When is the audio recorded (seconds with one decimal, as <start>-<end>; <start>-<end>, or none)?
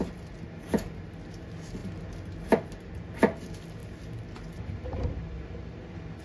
0.0-6.2